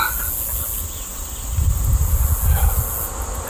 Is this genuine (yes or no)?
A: yes